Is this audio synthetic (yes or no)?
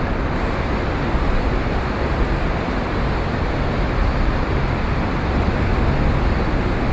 no